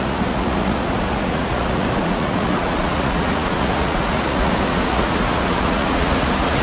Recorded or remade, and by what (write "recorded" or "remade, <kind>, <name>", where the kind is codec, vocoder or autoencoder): remade, vocoder, Vocos